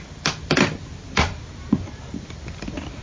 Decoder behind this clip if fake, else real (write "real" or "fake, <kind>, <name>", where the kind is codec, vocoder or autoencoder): real